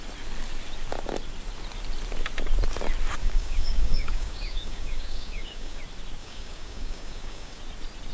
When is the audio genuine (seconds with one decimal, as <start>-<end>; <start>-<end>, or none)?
0.0-3.2; 5.8-6.2; 7.6-8.1